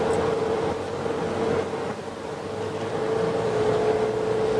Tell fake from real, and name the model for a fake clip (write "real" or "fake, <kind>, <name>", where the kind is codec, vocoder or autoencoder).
real